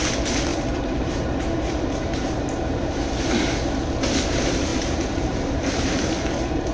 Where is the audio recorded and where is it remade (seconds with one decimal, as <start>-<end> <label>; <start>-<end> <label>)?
0.0-0.5 recorded; 0.5-3.1 remade; 3.1-4.7 recorded; 4.7-6.0 remade; 6.0-6.7 recorded

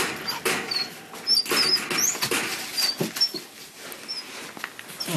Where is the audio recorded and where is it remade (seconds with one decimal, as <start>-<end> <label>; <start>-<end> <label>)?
0.0-5.2 recorded

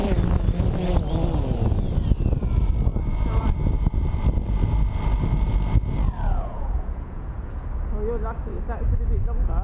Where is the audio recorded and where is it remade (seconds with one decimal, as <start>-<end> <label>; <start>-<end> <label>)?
0.0-6.5 recorded; 6.5-7.7 remade; 7.7-9.6 recorded

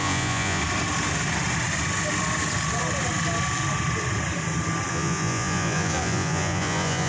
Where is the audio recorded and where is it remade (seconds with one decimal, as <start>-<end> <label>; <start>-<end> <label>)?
0.0-0.6 remade; 0.6-4.9 recorded; 4.9-7.1 remade